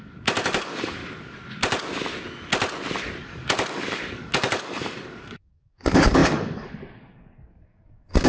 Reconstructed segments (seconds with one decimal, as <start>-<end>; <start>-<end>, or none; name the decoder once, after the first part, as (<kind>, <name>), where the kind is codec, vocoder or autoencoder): 0.0-1.0 (codec, DAC); 3.2-8.3